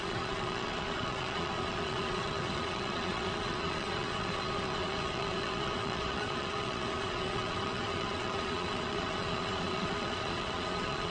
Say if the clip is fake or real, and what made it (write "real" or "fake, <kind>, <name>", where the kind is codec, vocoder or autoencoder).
fake, vocoder, Vocos